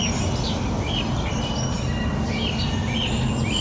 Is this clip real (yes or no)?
yes